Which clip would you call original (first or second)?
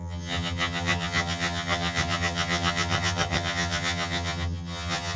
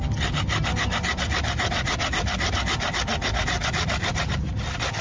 second